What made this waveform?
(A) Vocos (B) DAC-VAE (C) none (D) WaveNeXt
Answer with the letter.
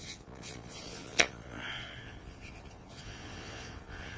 A